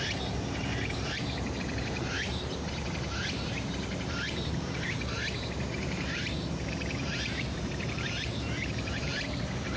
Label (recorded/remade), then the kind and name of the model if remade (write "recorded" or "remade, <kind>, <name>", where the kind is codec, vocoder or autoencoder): remade, vocoder, BigVGAN v2